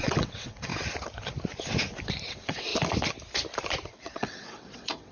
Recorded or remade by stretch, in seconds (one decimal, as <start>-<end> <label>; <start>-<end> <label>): 0.0-0.7 remade; 0.7-2.3 recorded; 2.3-2.7 remade; 2.7-3.9 recorded; 3.9-5.1 remade